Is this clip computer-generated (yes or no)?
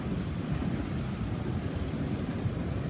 no